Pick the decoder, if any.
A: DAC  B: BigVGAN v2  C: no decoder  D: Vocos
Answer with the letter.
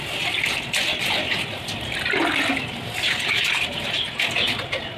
C